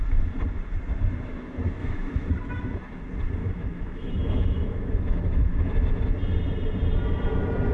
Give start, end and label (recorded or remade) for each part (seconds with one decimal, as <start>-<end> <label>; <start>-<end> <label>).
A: 0.0-1.8 recorded; 1.8-2.3 remade; 2.3-3.4 recorded; 3.4-5.7 remade; 5.7-7.7 recorded